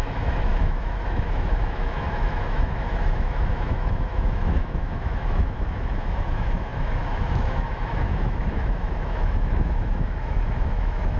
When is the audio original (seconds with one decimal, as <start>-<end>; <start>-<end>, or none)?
none